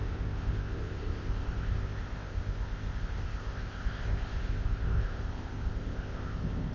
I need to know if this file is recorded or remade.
remade